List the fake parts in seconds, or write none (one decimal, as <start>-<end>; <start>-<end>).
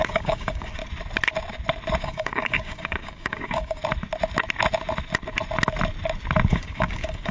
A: 0.0-0.8; 2.0-3.8; 6.5-7.3